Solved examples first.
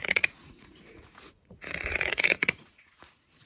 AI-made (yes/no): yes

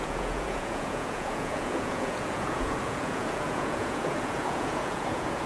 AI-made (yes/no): yes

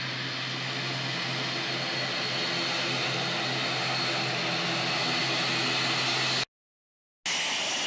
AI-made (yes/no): no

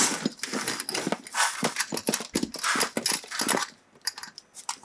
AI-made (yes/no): no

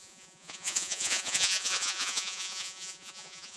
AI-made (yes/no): yes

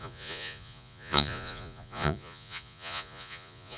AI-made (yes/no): yes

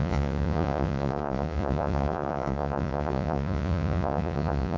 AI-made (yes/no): yes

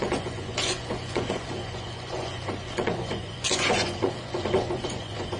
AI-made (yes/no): yes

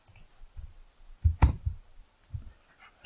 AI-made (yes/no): no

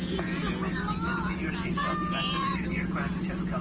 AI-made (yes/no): yes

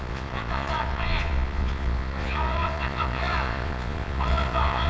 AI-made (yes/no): yes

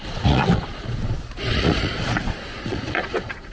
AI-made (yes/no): yes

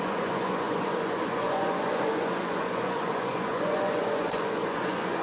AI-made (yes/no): yes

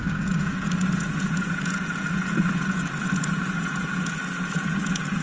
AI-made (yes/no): yes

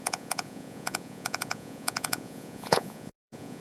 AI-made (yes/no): yes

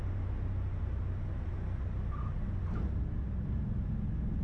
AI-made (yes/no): no